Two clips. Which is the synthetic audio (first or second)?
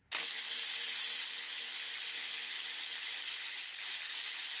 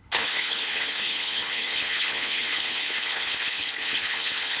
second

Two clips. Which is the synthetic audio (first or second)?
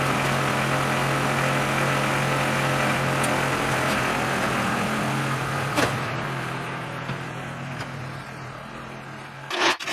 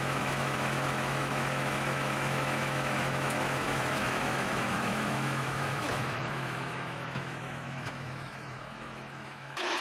second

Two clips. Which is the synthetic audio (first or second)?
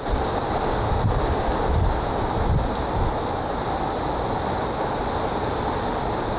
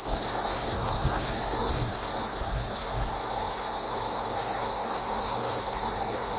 second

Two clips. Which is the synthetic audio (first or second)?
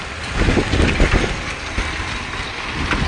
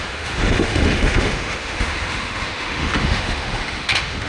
second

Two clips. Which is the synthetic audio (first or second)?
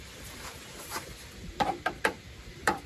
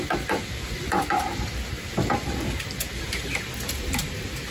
first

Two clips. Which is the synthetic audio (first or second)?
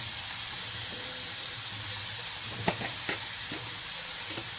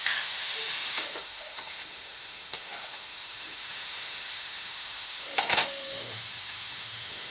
second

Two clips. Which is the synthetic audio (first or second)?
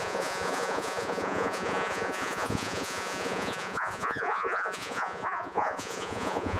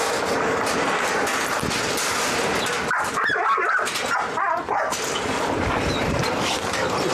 first